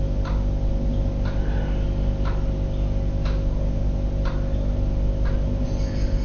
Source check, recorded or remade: recorded